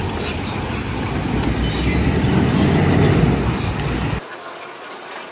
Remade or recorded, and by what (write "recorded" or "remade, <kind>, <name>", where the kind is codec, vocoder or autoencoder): recorded